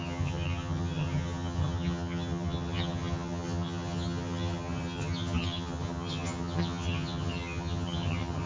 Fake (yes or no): yes